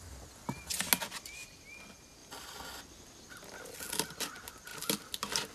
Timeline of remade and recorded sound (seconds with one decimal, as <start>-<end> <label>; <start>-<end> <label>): 0.0-5.5 recorded